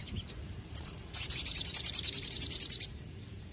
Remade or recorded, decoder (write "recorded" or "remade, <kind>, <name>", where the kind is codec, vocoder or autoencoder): remade, vocoder, BigVGAN v2